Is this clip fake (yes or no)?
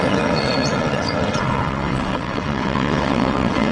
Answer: yes